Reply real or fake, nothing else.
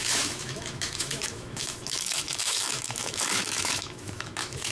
fake